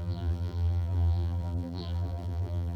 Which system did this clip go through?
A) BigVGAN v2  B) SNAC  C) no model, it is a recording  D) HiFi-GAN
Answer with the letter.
A